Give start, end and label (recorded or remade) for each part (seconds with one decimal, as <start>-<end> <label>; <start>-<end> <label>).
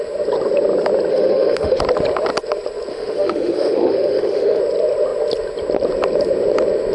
0.0-1.1 recorded; 1.1-1.8 remade; 1.8-2.9 recorded; 2.9-4.6 remade; 4.6-6.9 recorded